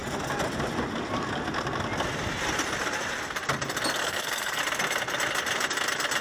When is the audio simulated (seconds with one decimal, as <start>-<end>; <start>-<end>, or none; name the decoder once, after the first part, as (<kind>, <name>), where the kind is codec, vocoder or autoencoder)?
4.0-4.6 (codec, SNAC)